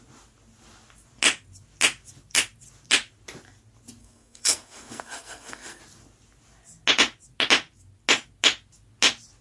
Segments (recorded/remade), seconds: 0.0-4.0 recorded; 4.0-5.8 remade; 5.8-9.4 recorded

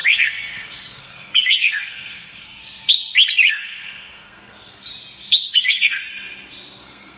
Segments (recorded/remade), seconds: 0.0-2.6 remade; 2.6-3.5 recorded; 3.5-4.9 remade; 4.9-5.5 recorded; 5.5-6.0 remade; 6.0-6.8 recorded; 6.8-7.2 remade